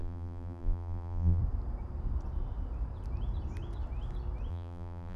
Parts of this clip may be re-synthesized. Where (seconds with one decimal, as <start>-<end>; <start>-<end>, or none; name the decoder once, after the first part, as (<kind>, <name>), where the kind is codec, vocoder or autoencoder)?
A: 0.0-1.4 (vocoder, BigVGAN v2); 4.5-5.2